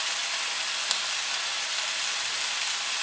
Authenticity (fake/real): real